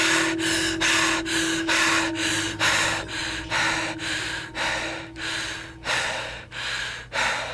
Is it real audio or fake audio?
real